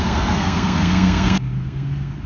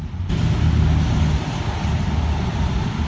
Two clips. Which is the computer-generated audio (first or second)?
first